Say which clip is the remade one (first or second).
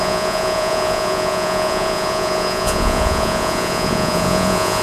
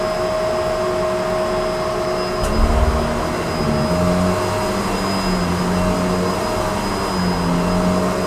first